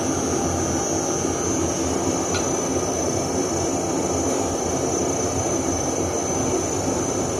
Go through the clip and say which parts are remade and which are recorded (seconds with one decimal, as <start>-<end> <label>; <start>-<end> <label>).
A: 0.0-7.4 recorded